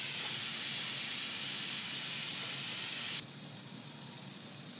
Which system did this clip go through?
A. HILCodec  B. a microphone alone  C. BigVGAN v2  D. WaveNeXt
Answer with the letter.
B